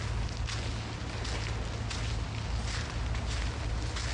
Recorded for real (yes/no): yes